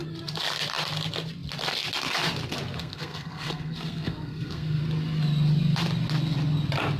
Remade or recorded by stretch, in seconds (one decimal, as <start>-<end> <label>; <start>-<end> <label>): 0.0-2.8 recorded; 2.8-4.8 remade; 4.8-7.0 recorded